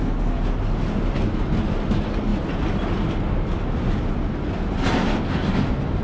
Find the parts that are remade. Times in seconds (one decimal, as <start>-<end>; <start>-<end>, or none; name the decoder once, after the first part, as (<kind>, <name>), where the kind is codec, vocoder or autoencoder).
none